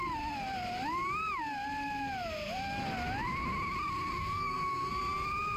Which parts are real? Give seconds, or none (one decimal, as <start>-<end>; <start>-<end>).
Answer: 0.0-4.1; 4.9-5.6